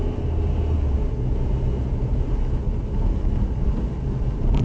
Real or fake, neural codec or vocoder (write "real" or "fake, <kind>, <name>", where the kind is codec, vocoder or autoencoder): real